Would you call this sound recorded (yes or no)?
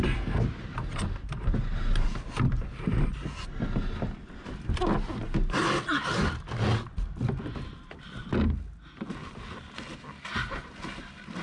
yes